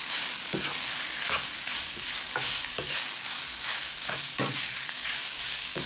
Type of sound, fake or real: fake